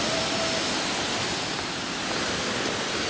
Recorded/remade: recorded